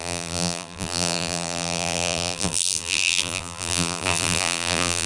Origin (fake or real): fake